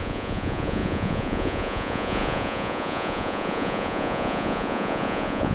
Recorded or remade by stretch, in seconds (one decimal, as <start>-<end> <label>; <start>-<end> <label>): 0.0-5.5 remade